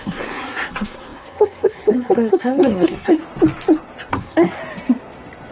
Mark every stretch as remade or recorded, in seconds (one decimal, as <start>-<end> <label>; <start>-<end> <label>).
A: 0.0-3.2 remade; 3.2-4.1 recorded; 4.1-4.6 remade; 4.6-5.5 recorded